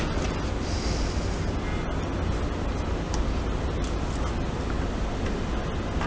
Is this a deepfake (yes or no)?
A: no